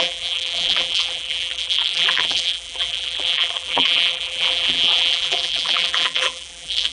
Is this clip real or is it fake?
fake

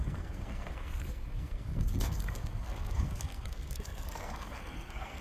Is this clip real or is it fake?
fake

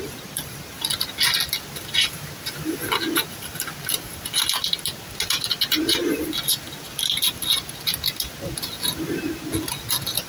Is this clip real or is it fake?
real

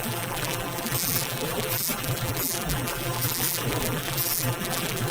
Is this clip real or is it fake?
fake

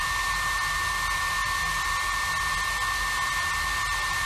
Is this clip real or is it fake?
real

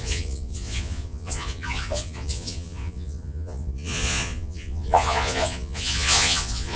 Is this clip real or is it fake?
fake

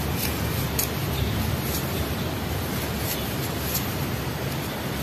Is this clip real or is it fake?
real